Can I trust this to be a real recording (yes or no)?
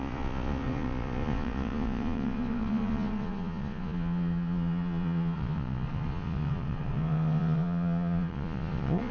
no